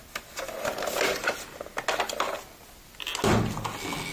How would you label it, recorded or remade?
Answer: recorded